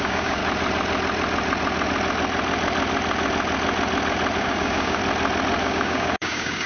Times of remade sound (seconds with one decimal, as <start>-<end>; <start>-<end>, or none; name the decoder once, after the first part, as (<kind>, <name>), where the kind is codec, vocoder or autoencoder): 0.0-0.4 (codec, DAC); 4.4-5.0; 5.6-6.7